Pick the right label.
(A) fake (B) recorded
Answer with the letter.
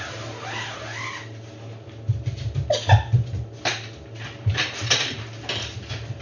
B